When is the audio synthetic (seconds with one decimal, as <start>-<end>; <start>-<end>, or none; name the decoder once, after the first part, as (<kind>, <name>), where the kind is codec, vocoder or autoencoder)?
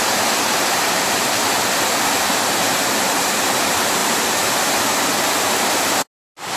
none